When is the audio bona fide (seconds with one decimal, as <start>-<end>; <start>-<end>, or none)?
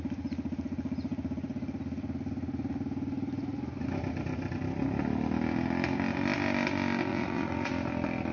0.0-7.1; 7.7-8.3